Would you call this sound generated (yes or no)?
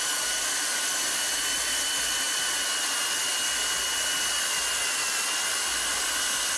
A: no